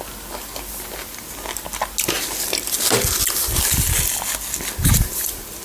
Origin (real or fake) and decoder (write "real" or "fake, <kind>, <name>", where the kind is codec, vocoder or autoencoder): real